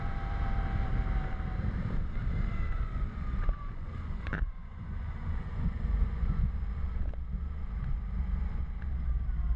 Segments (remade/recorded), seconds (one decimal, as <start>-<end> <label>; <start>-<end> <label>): 0.0-2.7 recorded; 2.7-6.5 remade; 6.5-9.6 recorded